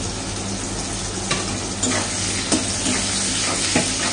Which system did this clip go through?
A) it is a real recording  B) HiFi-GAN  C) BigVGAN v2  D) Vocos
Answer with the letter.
A